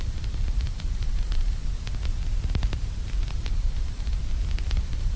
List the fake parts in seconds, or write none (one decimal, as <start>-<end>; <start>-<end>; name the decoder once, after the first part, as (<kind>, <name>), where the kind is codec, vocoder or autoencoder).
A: 0.0-1.6 (vocoder, BigVGAN v2); 3.3-4.2; 4.8-5.2